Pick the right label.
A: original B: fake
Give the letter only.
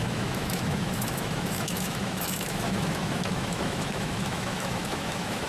B